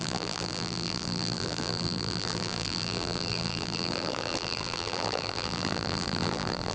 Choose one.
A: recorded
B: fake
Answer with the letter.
B